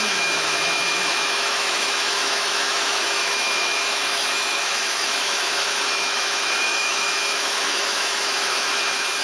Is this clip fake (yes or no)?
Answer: yes